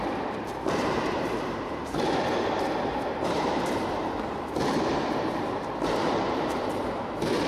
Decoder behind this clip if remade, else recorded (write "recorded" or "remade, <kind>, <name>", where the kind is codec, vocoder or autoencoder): remade, vocoder, BigVGAN v2